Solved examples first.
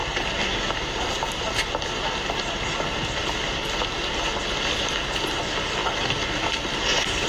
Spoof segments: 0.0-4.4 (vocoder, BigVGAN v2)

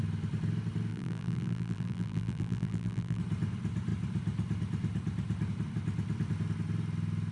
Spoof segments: 0.9-3.2 (vocoder, BigVGAN v2)

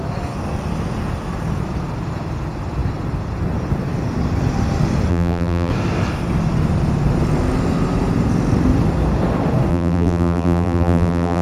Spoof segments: 5.1-5.7 (vocoder, BigVGAN v2); 9.7-11.4

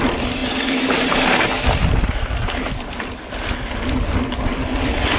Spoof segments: none

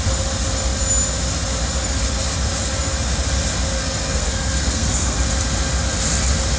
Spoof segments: 3.8-5.2 (codec, SNAC)